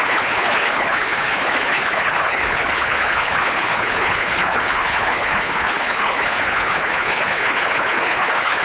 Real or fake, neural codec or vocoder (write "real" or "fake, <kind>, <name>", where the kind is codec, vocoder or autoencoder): fake, codec, HILCodec